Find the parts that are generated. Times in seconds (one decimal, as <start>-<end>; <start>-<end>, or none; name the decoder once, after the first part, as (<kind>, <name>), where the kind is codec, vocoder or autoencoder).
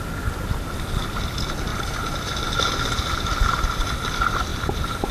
4.5-5.1 (vocoder, BigVGAN v2)